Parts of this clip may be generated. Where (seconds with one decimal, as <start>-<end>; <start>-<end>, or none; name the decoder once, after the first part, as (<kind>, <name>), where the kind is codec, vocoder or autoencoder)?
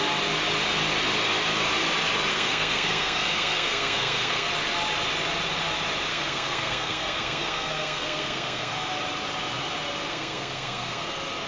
2.3-4.5 (codec, SNAC); 6.1-8.7; 10.1-11.1